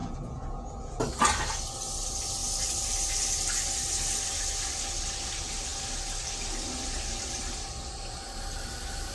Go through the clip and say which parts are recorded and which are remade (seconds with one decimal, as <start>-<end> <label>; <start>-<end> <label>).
0.0-1.0 remade; 1.0-9.1 recorded